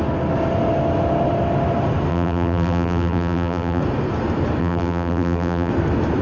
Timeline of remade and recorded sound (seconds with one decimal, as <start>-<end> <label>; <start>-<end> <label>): 0.0-2.1 recorded; 2.1-3.8 remade; 3.8-4.6 recorded; 4.6-5.7 remade; 5.7-6.2 recorded